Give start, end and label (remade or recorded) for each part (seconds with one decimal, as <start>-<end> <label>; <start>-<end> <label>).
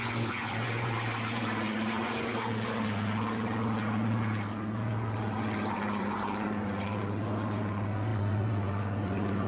0.0-9.5 remade